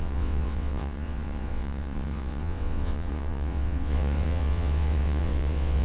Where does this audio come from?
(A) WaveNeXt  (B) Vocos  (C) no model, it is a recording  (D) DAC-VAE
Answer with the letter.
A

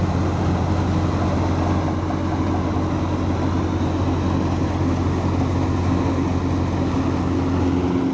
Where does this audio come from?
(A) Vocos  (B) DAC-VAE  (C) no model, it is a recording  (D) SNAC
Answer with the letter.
C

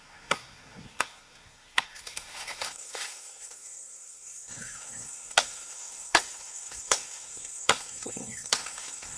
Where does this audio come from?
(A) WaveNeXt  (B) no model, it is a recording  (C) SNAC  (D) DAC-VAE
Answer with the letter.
C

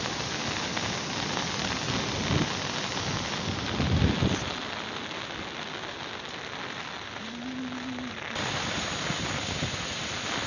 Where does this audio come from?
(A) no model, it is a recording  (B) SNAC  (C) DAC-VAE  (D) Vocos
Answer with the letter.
A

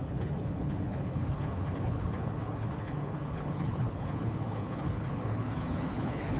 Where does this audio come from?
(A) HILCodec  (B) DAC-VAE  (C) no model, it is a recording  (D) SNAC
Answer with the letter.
A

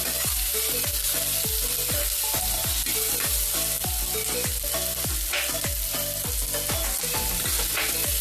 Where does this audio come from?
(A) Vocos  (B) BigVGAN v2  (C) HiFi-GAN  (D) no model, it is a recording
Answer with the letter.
D